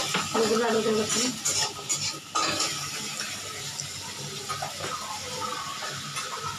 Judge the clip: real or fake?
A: real